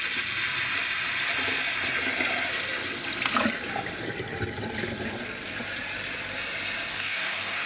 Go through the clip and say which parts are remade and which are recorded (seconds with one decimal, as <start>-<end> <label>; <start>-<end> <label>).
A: 0.0-6.9 recorded; 6.9-7.7 remade